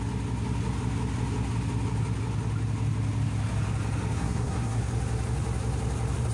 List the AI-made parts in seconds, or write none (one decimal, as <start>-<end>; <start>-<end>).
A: 4.1-4.8